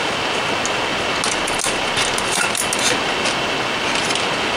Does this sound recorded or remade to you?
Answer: recorded